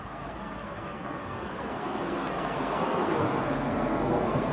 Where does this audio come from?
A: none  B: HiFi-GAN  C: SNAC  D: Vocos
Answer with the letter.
C